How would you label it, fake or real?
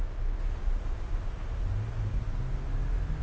real